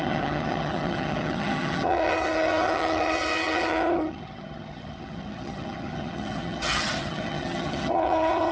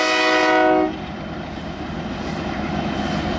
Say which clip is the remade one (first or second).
first